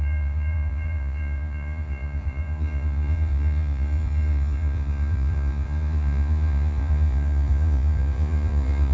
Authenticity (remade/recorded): remade